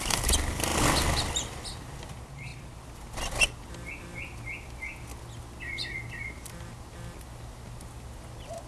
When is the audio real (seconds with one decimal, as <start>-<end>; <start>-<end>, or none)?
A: 0.0-8.7